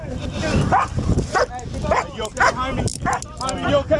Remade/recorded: recorded